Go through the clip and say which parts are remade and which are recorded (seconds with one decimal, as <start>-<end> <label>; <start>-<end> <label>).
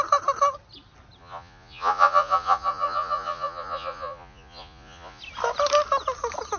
0.0-1.2 recorded; 1.2-5.2 remade; 5.2-6.6 recorded